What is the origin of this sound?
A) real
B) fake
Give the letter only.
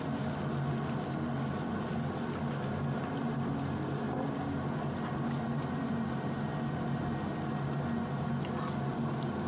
A